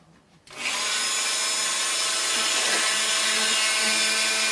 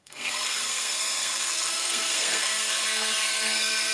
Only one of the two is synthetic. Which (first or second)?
second